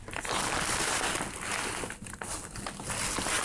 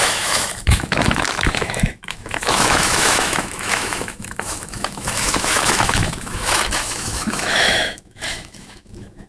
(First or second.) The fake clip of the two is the second